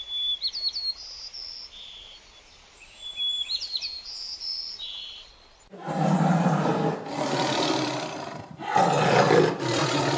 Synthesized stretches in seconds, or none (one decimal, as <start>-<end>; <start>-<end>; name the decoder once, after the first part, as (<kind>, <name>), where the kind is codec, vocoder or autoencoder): none